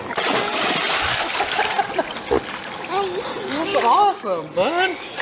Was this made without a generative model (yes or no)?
yes